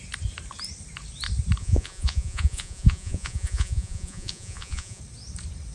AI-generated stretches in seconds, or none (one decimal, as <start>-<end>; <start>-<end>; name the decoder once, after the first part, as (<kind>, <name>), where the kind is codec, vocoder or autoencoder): 1.6-5.0 (vocoder, Vocos)

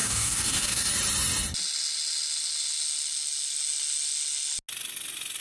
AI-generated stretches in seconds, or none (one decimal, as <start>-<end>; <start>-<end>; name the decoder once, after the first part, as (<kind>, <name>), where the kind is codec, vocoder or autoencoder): 0.0-0.9 (codec, DAC)